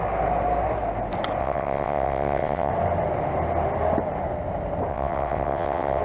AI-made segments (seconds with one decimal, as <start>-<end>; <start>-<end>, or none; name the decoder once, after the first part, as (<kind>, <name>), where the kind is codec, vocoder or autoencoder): 1.4-2.7 (vocoder, WaveNeXt); 4.9-6.0